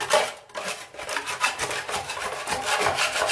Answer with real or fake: real